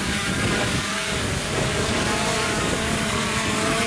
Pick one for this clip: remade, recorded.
remade